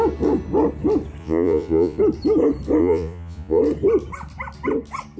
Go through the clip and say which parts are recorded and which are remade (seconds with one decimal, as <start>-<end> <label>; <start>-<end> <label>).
0.0-1.2 recorded; 1.2-2.0 remade; 2.0-2.8 recorded; 2.8-3.6 remade; 3.6-5.2 recorded